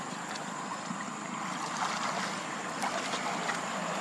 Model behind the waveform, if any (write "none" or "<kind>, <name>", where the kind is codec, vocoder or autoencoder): none